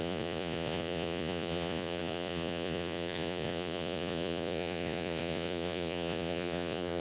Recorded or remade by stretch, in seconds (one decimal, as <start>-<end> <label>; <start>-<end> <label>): 0.0-7.0 remade